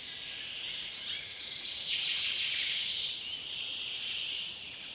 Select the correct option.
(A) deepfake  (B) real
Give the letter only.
A